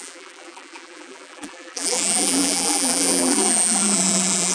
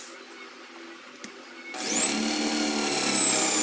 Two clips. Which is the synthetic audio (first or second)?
first